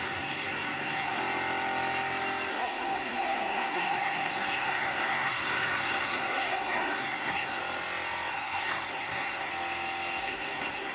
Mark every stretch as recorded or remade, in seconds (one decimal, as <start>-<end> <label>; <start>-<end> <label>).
0.0-1.2 remade; 1.2-2.5 recorded; 2.5-7.6 remade; 7.6-8.3 recorded; 8.3-9.5 remade; 9.5-10.2 recorded; 10.2-10.9 remade